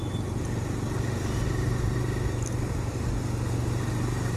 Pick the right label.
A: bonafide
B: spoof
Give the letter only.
A